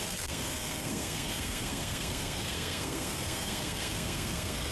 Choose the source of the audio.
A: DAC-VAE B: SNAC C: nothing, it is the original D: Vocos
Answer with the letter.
B